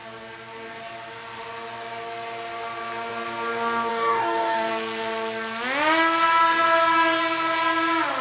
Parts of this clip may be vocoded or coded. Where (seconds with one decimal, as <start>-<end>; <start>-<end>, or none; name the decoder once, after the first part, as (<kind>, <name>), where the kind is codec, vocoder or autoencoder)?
3.9-4.7 (codec, DAC)